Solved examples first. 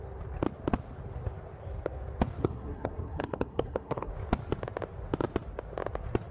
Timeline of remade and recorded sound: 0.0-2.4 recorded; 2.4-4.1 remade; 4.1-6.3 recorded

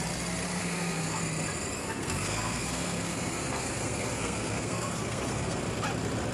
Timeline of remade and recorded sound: 0.0-0.6 recorded; 0.6-1.2 remade; 1.2-1.8 recorded; 1.8-5.6 remade; 5.6-6.3 recorded

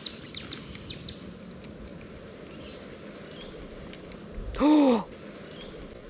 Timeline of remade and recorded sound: 0.0-6.1 recorded